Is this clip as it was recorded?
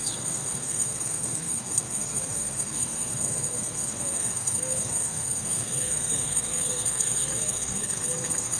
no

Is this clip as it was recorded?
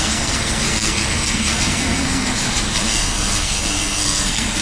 no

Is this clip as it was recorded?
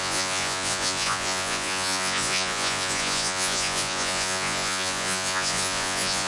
no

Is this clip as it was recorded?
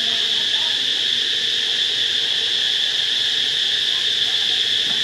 yes